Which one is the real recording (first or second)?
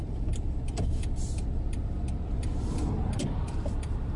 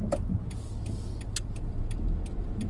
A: second